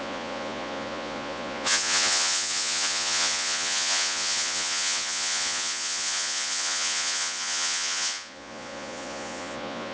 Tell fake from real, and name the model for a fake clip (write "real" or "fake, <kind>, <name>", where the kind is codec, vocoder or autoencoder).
fake, vocoder, Vocos